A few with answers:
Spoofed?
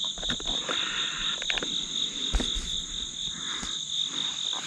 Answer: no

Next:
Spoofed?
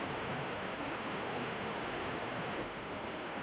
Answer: yes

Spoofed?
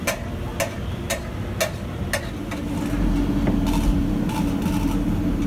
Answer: no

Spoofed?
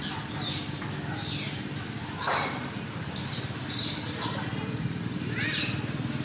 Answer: no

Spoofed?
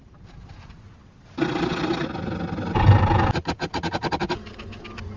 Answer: no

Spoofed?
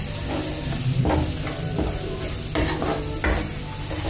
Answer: no